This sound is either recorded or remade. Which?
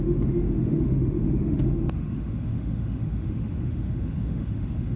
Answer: remade